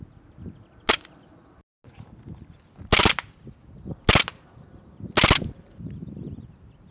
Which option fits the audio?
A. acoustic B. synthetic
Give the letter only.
A